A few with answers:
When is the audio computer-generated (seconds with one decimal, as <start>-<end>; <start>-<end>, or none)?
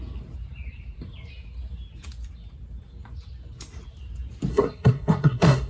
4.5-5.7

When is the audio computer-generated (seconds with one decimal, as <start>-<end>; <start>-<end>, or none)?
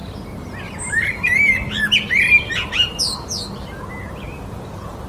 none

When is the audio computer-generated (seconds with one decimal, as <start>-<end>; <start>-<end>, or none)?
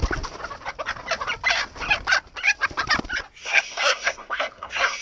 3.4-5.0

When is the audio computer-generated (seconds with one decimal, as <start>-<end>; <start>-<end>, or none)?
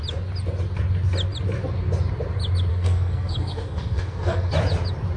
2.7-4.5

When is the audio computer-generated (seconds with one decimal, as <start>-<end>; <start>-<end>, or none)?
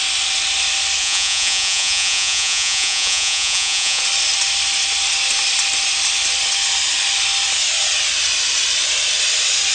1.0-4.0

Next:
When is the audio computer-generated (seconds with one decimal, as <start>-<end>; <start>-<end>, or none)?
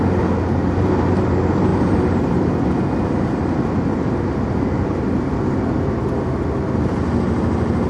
1.7-2.5